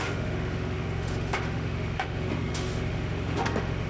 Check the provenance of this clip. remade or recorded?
remade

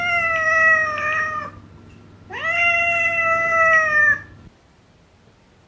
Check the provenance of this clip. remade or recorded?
recorded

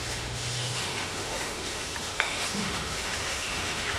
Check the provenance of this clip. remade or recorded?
remade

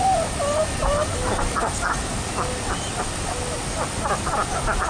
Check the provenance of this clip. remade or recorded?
recorded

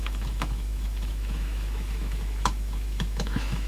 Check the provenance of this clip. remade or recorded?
remade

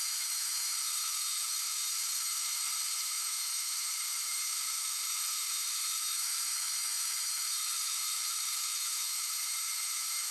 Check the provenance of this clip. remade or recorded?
remade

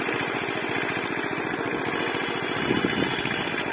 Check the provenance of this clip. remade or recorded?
recorded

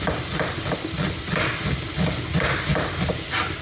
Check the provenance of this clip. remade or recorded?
recorded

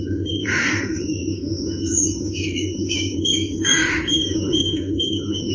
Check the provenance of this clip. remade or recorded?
remade